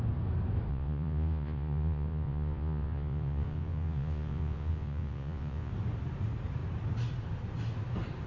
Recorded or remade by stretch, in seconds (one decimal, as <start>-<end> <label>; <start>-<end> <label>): 0.0-0.7 recorded; 0.7-5.7 remade; 5.7-8.3 recorded